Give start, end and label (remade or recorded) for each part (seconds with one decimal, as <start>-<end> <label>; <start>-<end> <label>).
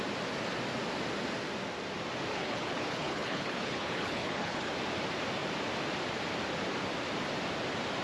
0.0-2.3 recorded; 2.3-4.7 remade; 4.7-8.0 recorded